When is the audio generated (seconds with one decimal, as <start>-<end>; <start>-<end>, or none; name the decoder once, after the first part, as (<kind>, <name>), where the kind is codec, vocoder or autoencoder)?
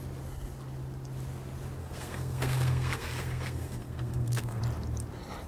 1.8-4.6 (codec, SNAC)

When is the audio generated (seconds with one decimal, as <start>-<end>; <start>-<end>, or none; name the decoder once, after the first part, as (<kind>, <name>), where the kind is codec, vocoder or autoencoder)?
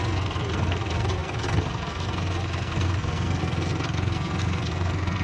0.0-5.2 (codec, SNAC)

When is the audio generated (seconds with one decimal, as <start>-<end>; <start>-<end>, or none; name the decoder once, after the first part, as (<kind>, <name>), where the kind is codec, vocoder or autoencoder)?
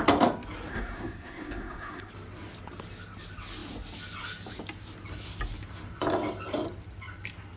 0.7-2.1 (codec, SNAC)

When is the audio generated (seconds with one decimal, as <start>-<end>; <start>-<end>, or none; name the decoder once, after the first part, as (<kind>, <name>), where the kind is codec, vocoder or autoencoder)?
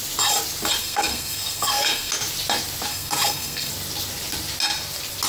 0.8-2.1 (codec, SNAC); 2.9-3.7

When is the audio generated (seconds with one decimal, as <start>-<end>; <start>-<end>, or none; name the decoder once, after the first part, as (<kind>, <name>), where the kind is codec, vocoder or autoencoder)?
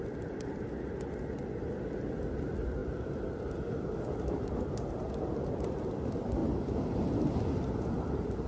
none